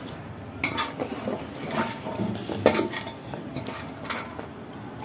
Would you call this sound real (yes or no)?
yes